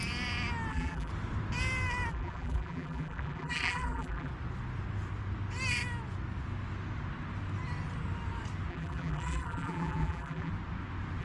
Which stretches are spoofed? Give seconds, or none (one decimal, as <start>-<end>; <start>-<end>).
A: 0.7-1.1; 2.1-4.3; 8.7-10.5